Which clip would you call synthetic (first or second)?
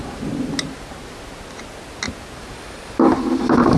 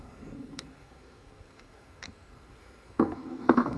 second